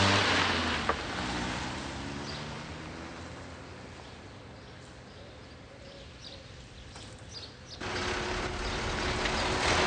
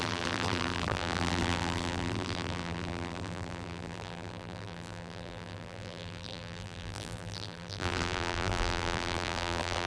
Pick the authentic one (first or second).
first